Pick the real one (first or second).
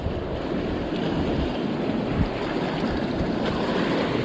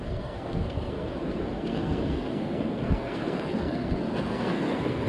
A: first